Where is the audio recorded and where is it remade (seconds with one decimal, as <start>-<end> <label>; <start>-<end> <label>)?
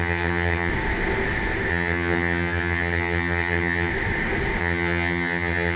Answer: 0.0-0.7 remade; 0.7-1.7 recorded; 1.7-3.9 remade; 3.9-4.6 recorded; 4.6-5.8 remade